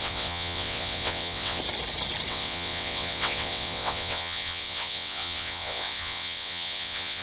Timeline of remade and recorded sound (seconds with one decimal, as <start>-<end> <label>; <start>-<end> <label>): 0.0-1.6 remade; 1.6-2.3 recorded; 2.3-7.2 remade